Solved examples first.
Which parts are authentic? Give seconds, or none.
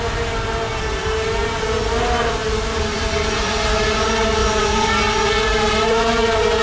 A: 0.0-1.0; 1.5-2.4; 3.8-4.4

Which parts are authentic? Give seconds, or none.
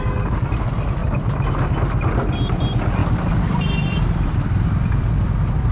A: 0.0-1.0; 1.5-3.0; 5.0-5.7